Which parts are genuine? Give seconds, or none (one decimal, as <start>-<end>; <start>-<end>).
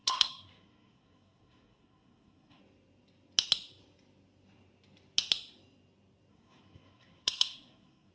2.6-6.3